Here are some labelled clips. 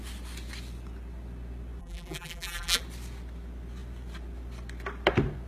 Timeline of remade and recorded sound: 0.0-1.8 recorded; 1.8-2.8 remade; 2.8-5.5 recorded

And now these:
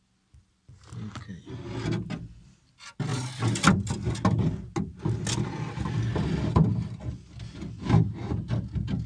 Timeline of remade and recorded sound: 0.0-9.1 recorded

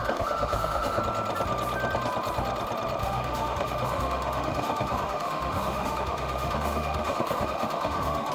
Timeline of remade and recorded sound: 0.0-1.0 remade; 1.0-3.0 recorded; 3.0-8.3 remade

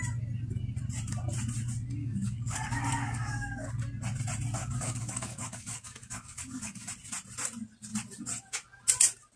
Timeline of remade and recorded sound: 0.0-2.0 recorded; 2.0-3.7 remade; 3.7-4.6 recorded; 4.6-6.9 remade; 6.9-9.4 recorded

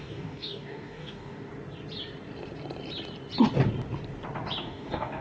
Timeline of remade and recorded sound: 0.0-1.5 remade; 1.5-4.6 recorded; 4.6-5.2 remade